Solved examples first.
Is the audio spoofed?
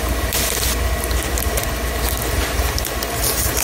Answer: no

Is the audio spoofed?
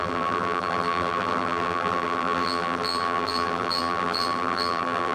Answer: yes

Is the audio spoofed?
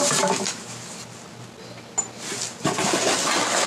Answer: no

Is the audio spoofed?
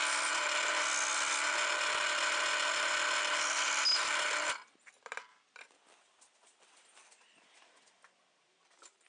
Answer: no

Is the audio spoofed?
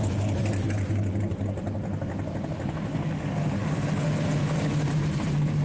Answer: no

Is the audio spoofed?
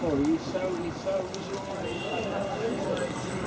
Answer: no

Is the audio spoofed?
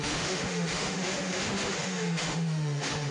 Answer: yes